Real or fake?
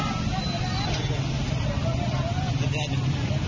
real